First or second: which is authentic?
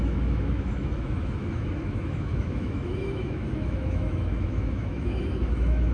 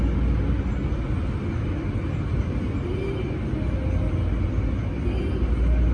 second